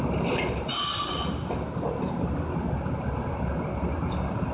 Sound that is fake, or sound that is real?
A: real